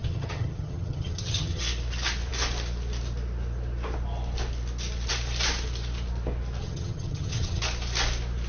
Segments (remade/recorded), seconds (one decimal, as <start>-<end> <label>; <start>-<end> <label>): 0.0-1.6 remade; 1.6-6.6 recorded; 6.6-7.6 remade; 7.6-8.5 recorded